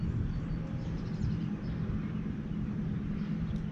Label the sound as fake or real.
real